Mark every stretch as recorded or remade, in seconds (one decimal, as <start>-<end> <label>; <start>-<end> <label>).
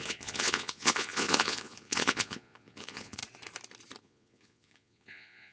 0.0-3.2 remade; 3.2-4.0 recorded; 4.0-5.5 remade